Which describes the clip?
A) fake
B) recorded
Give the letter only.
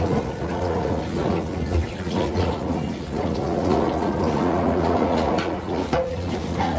A